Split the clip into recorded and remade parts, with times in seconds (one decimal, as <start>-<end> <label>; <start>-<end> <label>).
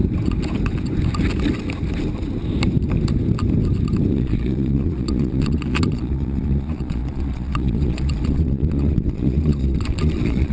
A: 0.0-4.1 recorded; 4.1-10.5 remade